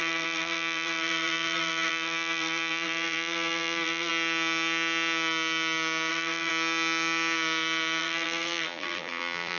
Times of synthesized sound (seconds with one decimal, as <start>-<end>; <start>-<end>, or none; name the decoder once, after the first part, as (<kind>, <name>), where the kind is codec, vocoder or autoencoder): 0.0-4.1 (vocoder, BigVGAN v2); 6.1-6.5; 8.0-9.6